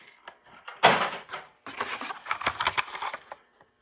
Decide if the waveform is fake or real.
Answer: real